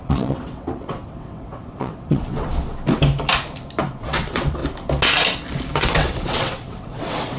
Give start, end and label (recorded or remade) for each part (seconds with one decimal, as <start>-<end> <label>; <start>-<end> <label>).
0.0-2.5 remade; 2.5-3.9 recorded; 3.9-4.6 remade; 4.6-5.8 recorded; 5.8-7.4 remade